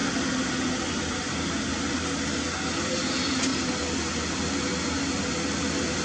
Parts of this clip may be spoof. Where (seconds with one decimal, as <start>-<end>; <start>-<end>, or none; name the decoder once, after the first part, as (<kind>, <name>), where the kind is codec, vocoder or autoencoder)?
none